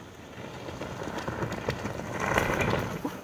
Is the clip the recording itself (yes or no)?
yes